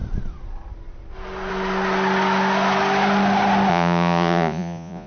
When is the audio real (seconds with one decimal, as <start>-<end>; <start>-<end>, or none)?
0.0-3.7